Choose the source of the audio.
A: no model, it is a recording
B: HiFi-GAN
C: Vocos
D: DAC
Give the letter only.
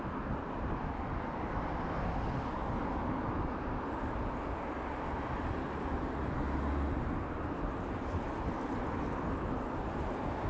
A